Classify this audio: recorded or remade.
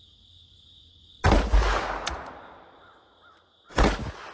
recorded